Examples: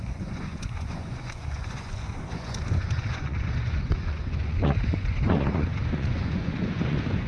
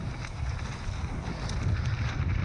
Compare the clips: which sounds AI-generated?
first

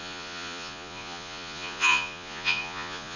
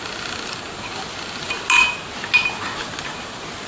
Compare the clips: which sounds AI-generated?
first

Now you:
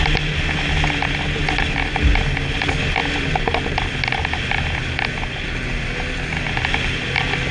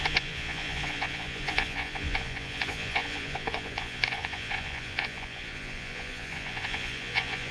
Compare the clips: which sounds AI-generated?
second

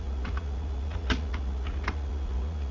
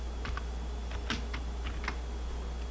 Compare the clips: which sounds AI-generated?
first